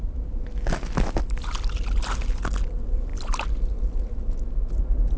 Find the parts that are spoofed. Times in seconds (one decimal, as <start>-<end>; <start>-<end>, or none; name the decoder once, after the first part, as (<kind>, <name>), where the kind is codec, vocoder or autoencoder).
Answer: none